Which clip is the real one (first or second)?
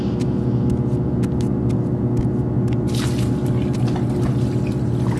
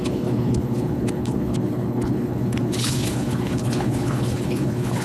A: first